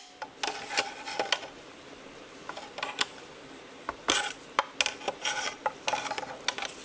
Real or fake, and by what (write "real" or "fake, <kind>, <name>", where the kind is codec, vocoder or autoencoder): real